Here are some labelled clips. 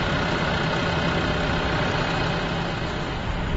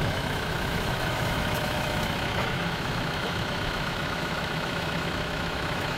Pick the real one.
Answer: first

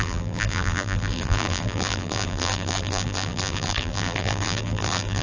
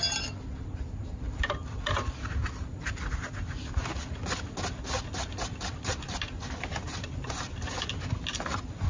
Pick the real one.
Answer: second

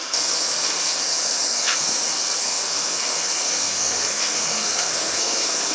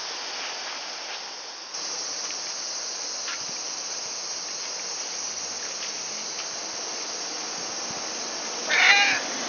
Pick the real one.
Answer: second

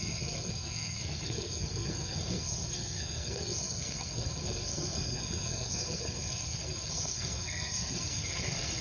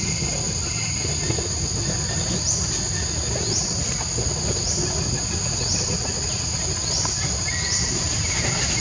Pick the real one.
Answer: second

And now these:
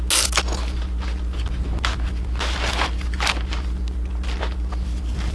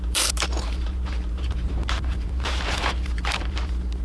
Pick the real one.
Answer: first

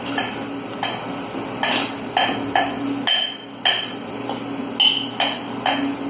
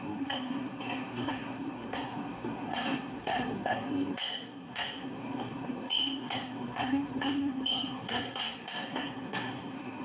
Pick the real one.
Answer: first